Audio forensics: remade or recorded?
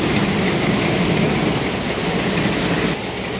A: recorded